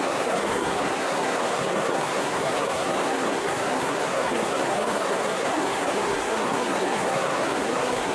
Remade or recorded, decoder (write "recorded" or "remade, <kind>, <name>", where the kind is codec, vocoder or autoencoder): remade, codec, SNAC